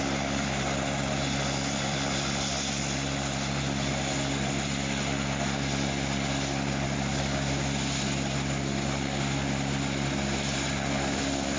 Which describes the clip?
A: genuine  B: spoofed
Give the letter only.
B